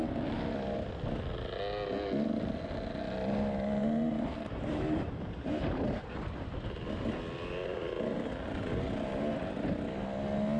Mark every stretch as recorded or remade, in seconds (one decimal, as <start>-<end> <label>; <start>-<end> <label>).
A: 0.0-3.8 recorded; 3.8-6.4 remade; 6.4-10.6 recorded